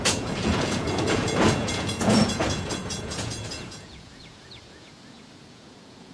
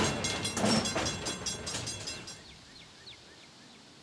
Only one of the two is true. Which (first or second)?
second